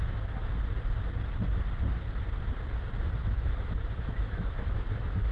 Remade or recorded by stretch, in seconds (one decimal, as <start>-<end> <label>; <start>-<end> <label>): 0.0-0.4 remade; 0.4-3.2 recorded; 3.2-5.3 remade